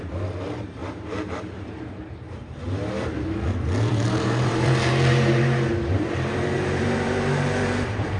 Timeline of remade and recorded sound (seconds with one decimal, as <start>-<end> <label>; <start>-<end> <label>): 0.0-0.8 remade; 0.8-3.9 recorded; 3.9-8.2 remade